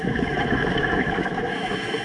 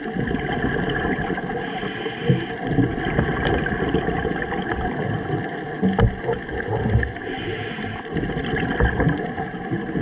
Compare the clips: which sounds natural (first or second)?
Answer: second